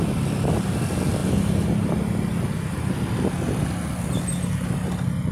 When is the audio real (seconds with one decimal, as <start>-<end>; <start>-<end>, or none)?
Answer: 0.0-5.3